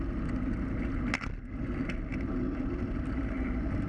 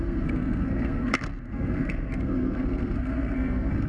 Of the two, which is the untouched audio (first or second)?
first